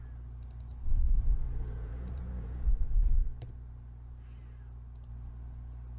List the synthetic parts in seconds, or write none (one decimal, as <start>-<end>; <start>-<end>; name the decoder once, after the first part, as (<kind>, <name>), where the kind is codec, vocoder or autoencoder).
0.9-2.7 (vocoder, Vocos)